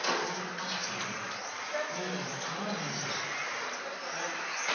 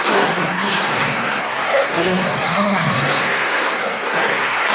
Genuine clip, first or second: first